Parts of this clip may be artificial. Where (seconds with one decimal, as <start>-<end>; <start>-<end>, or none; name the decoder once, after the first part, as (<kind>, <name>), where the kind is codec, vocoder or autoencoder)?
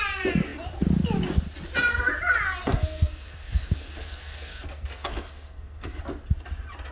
2.6-6.0 (codec, SNAC)